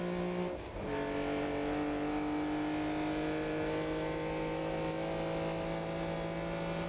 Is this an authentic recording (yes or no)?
yes